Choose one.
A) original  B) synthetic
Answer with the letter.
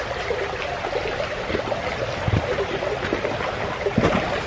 A